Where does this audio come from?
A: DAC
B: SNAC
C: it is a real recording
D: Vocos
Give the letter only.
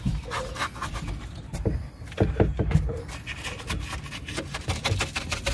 C